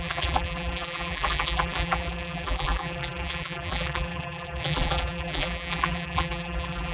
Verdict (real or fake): fake